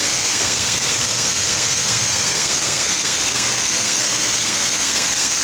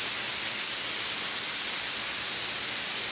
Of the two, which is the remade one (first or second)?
first